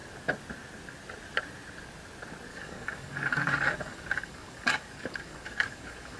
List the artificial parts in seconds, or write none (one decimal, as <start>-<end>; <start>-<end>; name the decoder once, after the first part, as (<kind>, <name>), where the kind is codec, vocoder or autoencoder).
2.5-6.2 (codec, DAC)